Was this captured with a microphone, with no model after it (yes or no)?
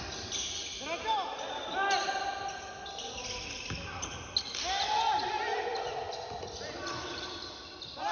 yes